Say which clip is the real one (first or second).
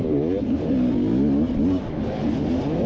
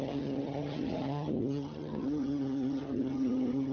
first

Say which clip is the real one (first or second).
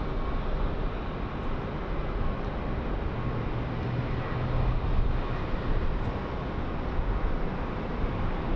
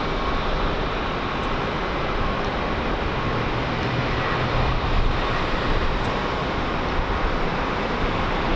first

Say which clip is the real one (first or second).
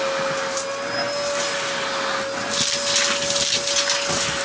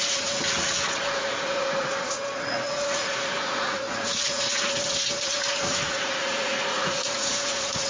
first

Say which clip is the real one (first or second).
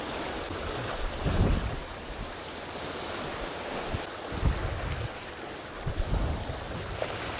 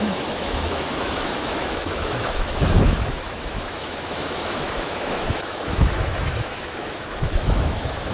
first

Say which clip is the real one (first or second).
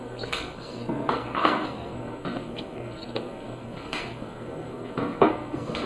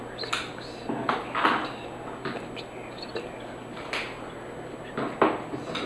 second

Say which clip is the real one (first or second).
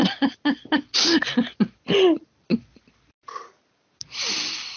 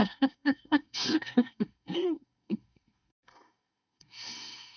first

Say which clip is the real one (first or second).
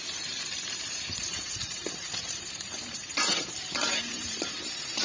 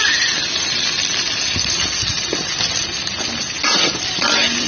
second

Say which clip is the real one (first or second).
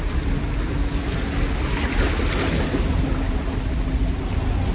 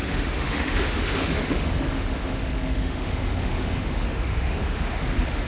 first